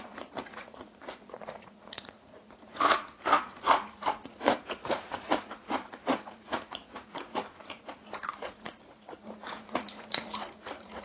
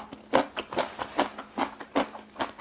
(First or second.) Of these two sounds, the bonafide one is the second